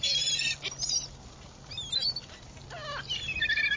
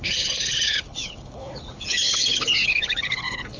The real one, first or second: first